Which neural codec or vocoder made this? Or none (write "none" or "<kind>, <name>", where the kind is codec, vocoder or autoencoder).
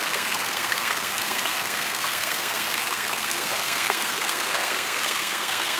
codec, SNAC